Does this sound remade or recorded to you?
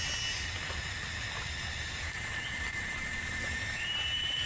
recorded